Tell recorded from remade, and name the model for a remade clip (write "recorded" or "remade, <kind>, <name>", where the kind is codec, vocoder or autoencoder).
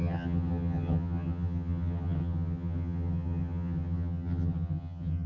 remade, vocoder, HiFi-GAN